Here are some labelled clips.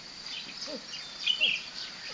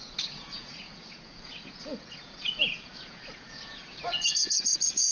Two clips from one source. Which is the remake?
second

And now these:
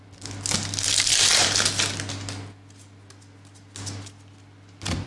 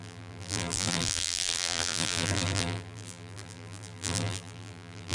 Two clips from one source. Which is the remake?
second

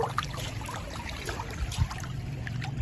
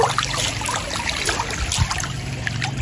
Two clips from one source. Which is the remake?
first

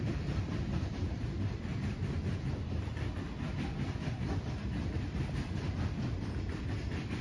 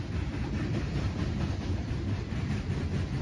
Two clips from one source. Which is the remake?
first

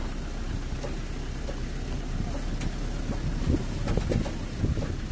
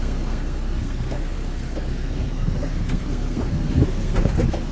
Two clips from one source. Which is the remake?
second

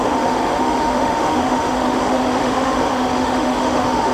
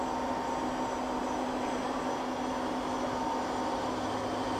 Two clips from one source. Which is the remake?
first